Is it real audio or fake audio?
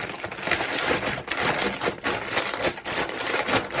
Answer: real